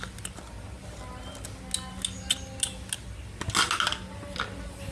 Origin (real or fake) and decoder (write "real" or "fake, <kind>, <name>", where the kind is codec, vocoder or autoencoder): real